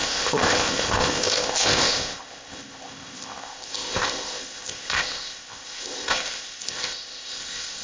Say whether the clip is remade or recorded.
remade